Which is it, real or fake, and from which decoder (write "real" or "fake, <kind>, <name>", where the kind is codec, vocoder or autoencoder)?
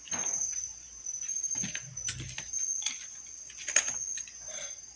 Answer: real